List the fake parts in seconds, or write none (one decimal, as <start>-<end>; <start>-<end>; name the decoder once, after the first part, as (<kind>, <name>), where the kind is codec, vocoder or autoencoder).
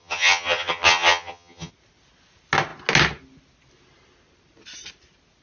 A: 0.0-1.7 (vocoder, HiFi-GAN)